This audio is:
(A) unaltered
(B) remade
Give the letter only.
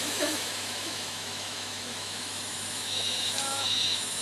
B